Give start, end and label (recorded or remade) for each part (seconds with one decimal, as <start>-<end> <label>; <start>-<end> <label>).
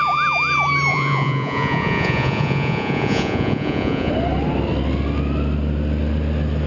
0.0-0.9 recorded; 0.9-4.1 remade; 4.1-6.7 recorded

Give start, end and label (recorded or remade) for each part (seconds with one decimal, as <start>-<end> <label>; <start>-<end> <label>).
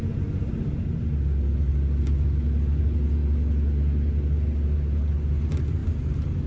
0.0-6.5 recorded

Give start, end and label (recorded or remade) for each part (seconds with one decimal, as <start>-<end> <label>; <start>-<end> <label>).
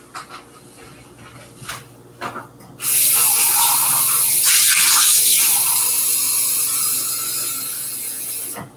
0.0-7.7 recorded; 7.7-8.3 remade; 8.3-8.8 recorded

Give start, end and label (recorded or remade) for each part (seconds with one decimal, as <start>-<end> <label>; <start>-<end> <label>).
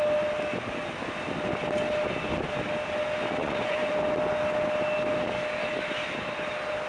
0.0-3.4 recorded; 3.4-3.9 remade; 3.9-6.9 recorded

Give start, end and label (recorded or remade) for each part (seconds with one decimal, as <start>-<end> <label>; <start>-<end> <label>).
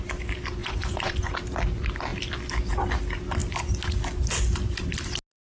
0.0-0.6 recorded; 0.6-1.3 remade; 1.3-5.5 recorded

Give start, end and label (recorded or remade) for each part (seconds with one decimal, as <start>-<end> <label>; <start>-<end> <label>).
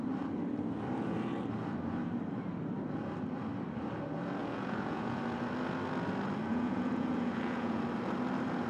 0.0-4.4 recorded; 4.4-5.2 remade; 5.2-6.5 recorded; 6.5-7.8 remade; 7.8-8.7 recorded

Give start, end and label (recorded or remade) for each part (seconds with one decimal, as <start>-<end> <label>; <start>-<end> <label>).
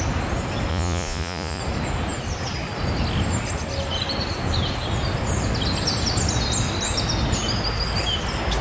0.0-0.7 recorded; 0.7-1.6 remade; 1.6-8.6 recorded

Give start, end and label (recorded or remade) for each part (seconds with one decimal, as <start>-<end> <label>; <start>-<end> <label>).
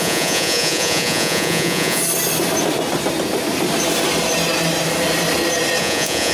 0.0-2.0 remade; 2.0-5.8 recorded; 5.8-6.3 remade